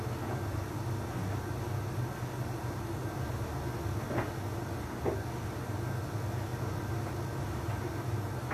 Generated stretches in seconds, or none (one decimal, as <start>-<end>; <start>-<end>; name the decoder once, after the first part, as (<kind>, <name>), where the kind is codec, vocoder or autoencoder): none